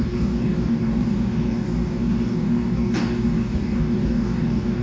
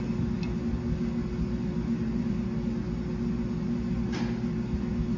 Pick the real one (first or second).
second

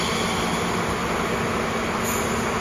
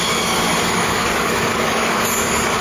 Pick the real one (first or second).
first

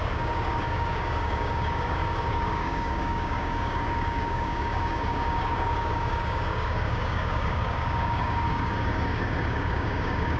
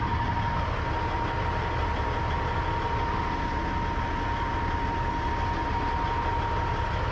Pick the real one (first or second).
second